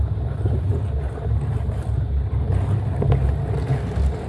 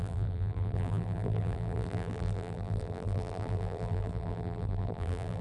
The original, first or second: first